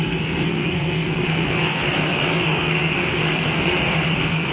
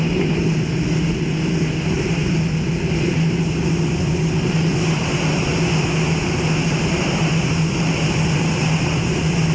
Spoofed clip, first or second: first